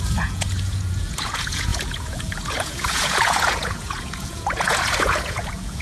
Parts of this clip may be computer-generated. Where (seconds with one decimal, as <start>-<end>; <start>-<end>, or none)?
0.0-5.8